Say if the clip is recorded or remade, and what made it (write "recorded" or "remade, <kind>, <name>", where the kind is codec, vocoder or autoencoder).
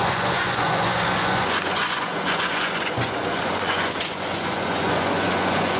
remade, vocoder, Vocos